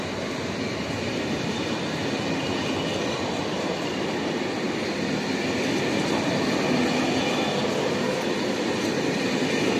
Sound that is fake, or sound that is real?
real